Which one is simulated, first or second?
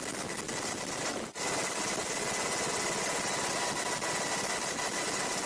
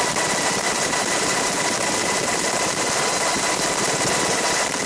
second